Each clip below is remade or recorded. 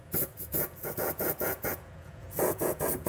remade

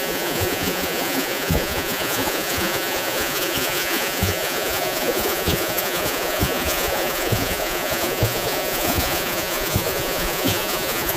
remade